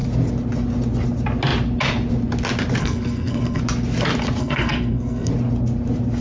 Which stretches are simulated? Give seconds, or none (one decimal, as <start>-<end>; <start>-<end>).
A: 2.8-3.6; 4.4-5.3